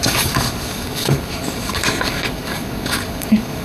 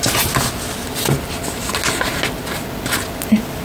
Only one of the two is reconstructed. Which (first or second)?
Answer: first